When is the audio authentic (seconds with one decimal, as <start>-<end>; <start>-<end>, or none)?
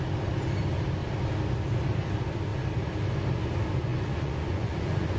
0.0-3.9